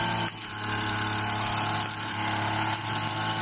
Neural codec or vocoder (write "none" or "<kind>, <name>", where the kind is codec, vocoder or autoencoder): none